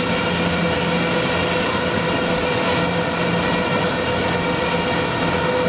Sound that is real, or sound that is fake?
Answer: real